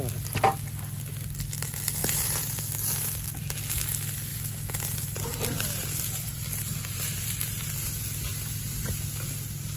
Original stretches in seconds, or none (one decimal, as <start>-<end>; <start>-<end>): 0.0-2.0; 2.6-4.3; 7.7-8.3; 9.3-9.8